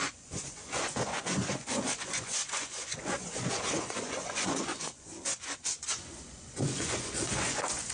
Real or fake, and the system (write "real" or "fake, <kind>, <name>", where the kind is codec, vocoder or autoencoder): fake, vocoder, Vocos